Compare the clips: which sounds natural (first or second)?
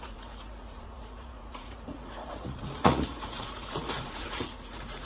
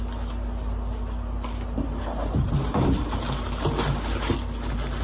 second